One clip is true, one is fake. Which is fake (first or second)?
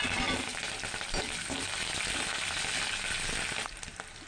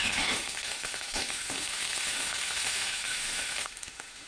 second